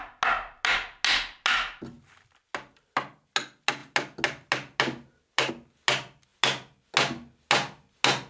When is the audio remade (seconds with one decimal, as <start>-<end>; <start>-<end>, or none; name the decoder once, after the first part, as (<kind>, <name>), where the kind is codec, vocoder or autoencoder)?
none